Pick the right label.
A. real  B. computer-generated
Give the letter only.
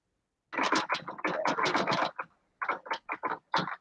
A